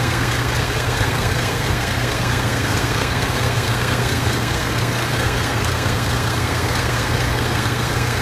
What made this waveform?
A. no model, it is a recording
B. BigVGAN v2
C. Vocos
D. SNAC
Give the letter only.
D